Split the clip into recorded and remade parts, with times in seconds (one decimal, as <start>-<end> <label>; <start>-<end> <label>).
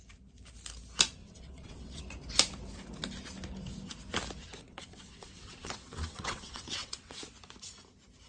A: 0.0-1.2 recorded; 1.2-2.0 remade; 2.0-4.6 recorded; 4.6-7.2 remade; 7.2-8.3 recorded